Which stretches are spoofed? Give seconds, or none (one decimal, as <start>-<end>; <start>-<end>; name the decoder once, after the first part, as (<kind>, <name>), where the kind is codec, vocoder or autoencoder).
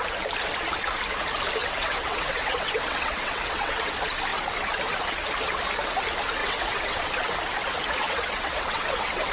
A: 1.6-3.9 (vocoder, WaveNeXt); 6.4-7.0; 8.0-9.3